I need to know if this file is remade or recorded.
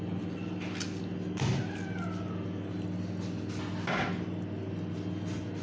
recorded